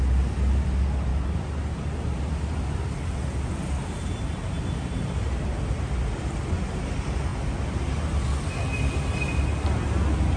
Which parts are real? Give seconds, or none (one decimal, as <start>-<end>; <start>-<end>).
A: 0.0-10.4